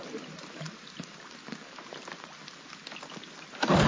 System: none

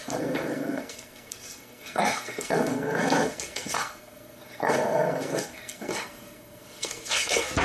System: codec, SNAC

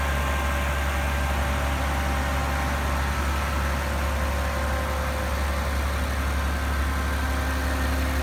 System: none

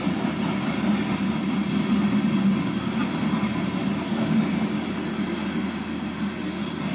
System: none